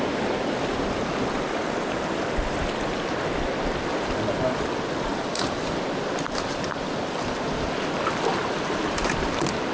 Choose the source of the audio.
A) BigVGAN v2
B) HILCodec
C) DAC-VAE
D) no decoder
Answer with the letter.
A